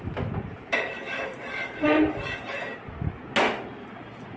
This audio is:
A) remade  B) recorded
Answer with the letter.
B